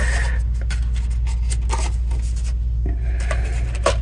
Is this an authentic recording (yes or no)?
yes